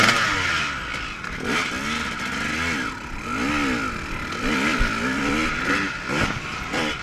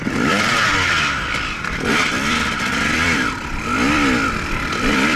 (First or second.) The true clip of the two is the first